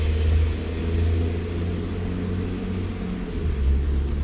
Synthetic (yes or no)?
no